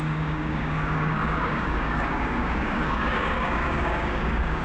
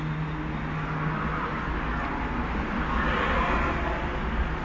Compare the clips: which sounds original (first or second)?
second